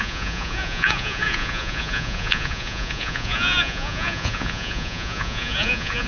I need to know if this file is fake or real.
fake